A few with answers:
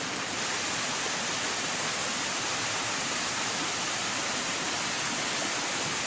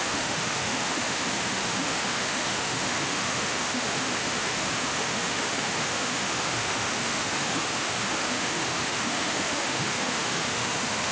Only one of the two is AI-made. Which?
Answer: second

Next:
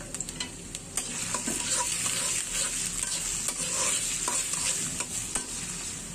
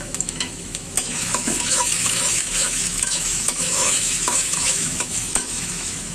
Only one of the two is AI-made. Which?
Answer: second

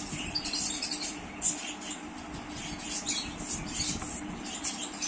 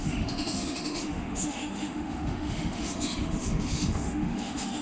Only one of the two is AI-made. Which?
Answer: second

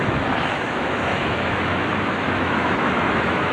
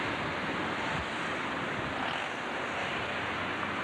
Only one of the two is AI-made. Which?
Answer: first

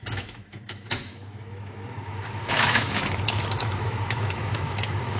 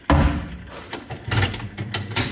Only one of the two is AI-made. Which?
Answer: first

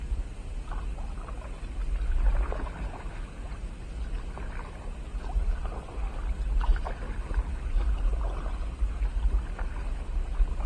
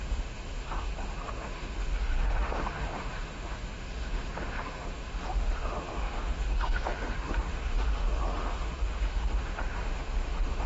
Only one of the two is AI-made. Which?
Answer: second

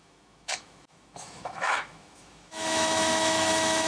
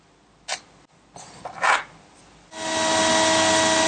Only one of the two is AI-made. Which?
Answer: first